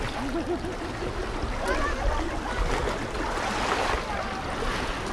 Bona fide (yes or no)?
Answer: yes